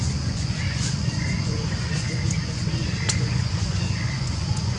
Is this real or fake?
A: fake